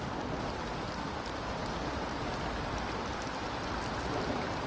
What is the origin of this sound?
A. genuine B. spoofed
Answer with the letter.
A